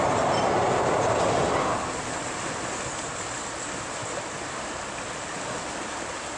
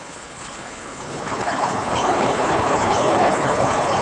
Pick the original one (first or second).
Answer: first